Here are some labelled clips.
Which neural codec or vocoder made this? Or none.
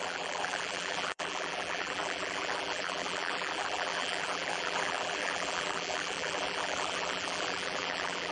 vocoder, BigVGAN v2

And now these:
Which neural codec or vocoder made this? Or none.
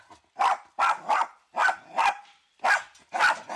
none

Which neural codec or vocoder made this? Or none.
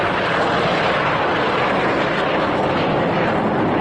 vocoder, BigVGAN v2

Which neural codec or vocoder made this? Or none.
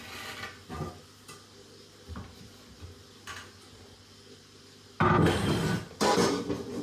none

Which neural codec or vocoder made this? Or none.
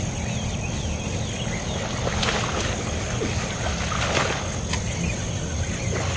none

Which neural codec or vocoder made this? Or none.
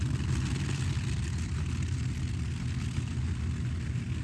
none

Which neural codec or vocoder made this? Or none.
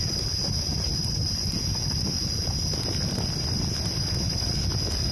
none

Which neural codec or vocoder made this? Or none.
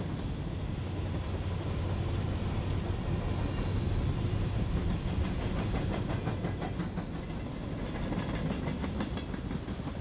none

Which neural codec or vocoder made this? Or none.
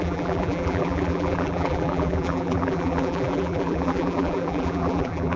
vocoder, BigVGAN v2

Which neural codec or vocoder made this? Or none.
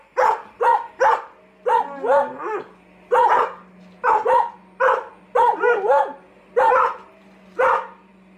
none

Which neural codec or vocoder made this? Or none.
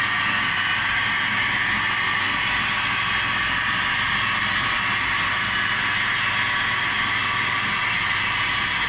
none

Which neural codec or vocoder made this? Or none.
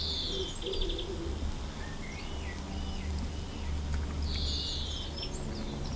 none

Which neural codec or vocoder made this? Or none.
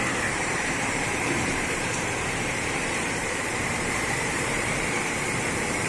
vocoder, BigVGAN v2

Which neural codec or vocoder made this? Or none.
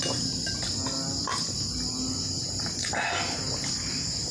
none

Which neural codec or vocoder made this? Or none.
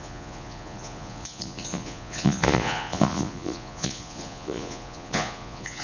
vocoder, Vocos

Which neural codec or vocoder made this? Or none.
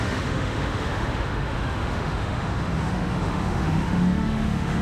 autoencoder, DAC-VAE